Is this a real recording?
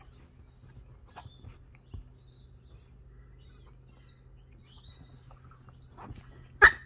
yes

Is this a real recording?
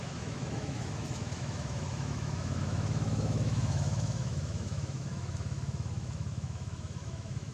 no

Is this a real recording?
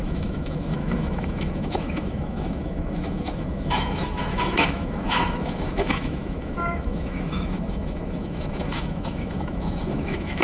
no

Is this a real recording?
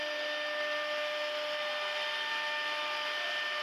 yes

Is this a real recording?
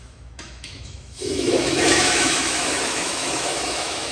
no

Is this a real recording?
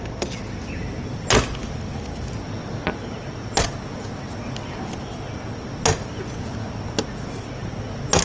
yes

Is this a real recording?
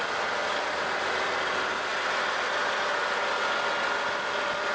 yes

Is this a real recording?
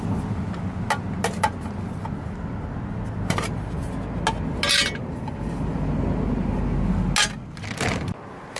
yes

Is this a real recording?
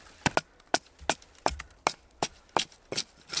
yes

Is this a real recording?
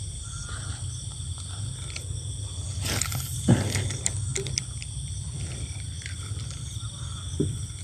yes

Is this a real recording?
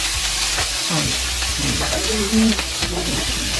yes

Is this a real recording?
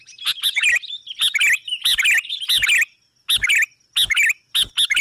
yes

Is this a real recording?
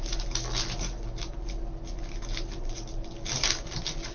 yes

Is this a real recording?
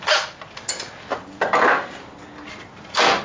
yes